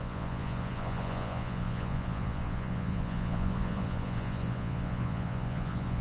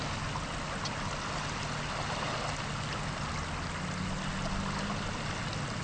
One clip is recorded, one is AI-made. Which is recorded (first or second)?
second